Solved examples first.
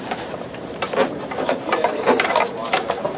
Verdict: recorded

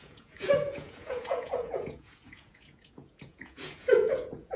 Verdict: remade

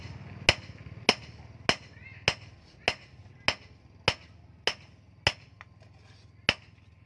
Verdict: recorded